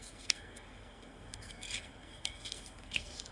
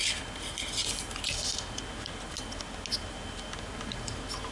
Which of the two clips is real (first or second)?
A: second